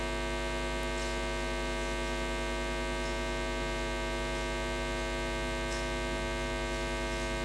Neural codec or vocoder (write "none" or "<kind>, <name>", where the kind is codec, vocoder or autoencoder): none